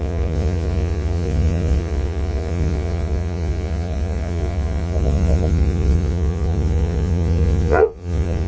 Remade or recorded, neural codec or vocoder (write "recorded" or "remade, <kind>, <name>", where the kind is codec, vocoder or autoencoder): remade, vocoder, Vocos